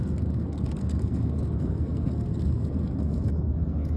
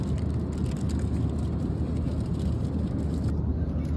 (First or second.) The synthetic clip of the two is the first